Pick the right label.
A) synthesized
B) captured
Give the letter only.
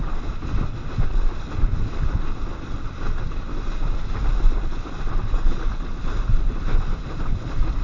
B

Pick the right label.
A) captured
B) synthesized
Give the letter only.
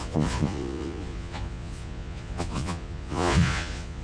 B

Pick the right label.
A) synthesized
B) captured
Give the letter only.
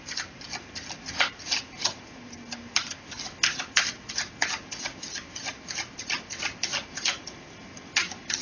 B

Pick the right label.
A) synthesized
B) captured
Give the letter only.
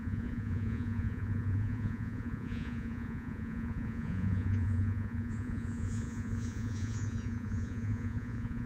A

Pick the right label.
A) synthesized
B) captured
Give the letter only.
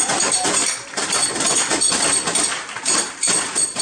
B